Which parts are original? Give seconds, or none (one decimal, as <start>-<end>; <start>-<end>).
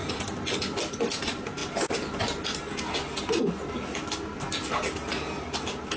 0.0-6.0